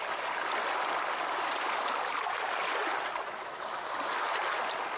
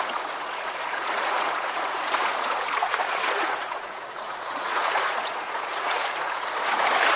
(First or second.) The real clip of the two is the first